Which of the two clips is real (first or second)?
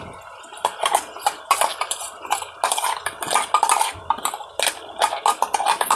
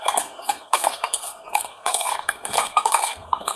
first